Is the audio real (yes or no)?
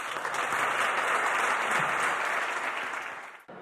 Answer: yes